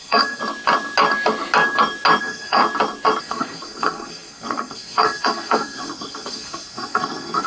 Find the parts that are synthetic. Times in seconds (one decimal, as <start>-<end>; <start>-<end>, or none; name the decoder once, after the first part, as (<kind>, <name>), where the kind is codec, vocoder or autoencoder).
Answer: 0.0-0.4 (codec, SNAC); 2.2-2.6; 3.2-7.5